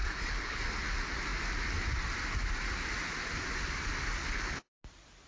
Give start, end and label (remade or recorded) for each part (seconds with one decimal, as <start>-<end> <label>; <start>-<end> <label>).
0.0-0.6 remade; 0.6-4.2 recorded; 4.2-4.8 remade; 4.8-5.3 recorded